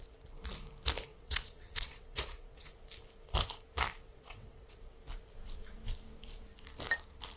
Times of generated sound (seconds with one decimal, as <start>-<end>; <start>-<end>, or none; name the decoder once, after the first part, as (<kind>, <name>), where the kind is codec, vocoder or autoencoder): 1.1-2.7 (vocoder, WaveNeXt); 4.1-4.8